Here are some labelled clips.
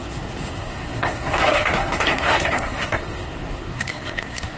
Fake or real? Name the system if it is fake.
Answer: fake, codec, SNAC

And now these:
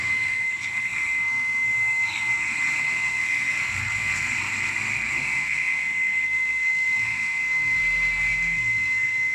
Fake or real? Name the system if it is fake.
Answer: fake, codec, SNAC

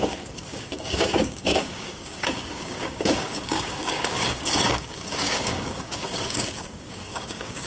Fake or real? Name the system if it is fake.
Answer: fake, codec, DAC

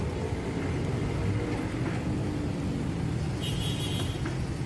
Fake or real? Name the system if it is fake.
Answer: real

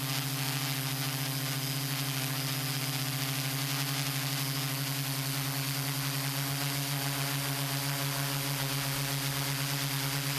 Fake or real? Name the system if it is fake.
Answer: real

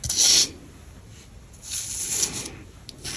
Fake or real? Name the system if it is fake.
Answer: real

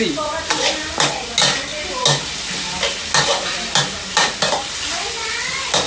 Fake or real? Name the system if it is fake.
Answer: real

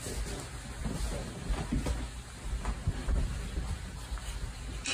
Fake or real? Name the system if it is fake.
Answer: real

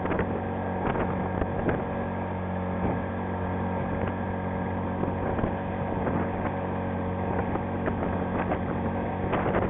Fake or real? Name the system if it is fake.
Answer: real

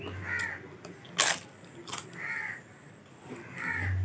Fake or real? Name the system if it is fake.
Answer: real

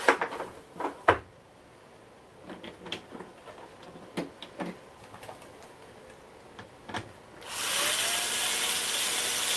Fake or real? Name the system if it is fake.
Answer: real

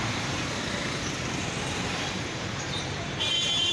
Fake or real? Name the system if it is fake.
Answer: fake, vocoder, BigVGAN v2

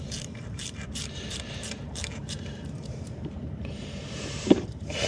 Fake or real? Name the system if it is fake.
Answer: fake, vocoder, BigVGAN v2